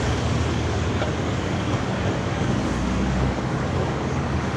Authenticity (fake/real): fake